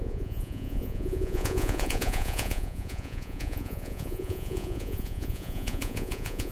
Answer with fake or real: fake